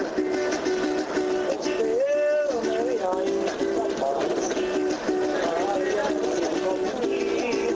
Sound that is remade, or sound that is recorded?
recorded